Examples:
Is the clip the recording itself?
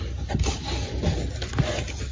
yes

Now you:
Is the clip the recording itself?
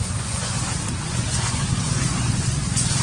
no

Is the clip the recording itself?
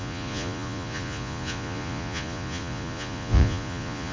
no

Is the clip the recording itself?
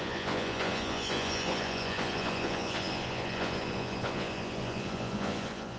no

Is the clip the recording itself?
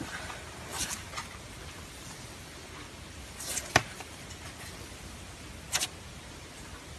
yes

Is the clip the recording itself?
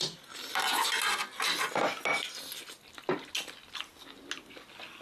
yes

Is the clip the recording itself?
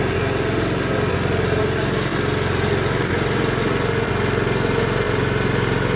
yes